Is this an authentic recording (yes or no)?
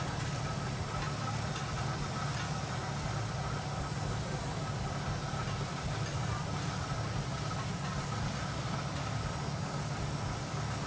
yes